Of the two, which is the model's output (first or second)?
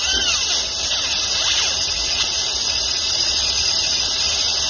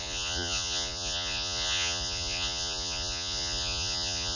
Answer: second